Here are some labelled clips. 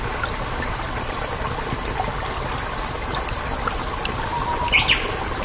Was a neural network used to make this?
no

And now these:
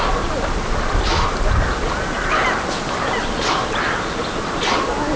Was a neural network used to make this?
no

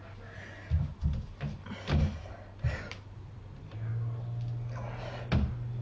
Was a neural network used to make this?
no